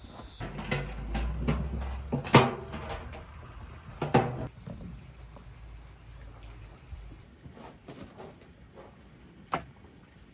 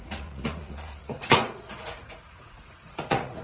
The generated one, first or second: second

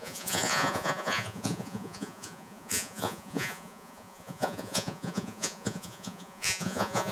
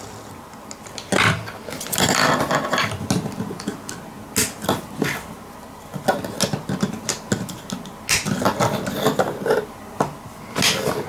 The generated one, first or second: first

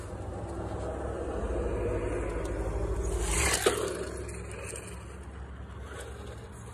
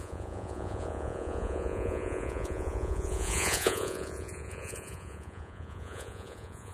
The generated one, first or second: second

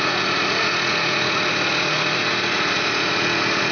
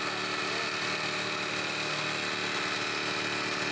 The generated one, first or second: first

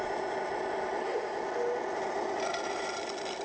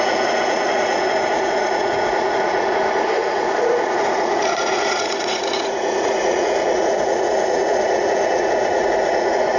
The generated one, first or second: second